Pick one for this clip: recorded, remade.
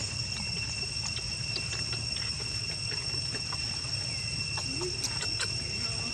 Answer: recorded